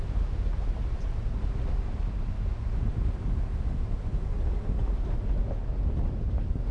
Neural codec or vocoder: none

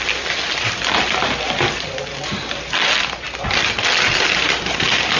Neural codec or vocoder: none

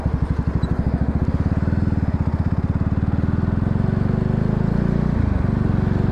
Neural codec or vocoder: none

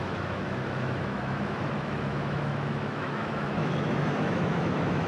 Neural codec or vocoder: autoencoder, DAC-VAE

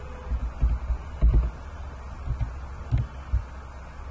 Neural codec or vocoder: none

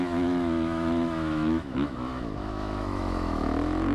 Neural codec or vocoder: autoencoder, DAC-VAE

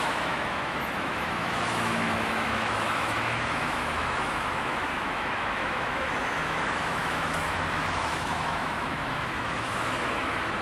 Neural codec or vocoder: autoencoder, DAC-VAE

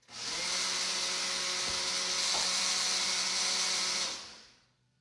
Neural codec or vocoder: none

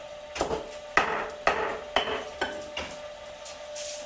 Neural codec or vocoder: none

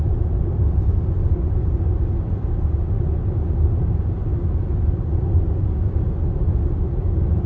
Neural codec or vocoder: none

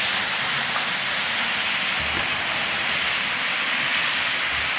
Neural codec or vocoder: none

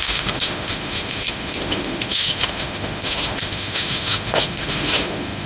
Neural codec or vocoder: autoencoder, DAC-VAE